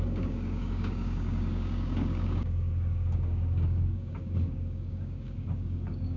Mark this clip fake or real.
fake